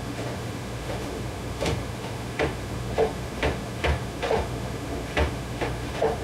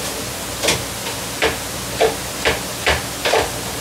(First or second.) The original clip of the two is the second